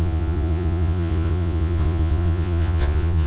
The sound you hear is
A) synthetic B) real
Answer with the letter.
A